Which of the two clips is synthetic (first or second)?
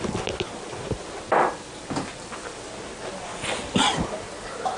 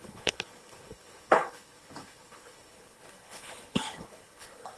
second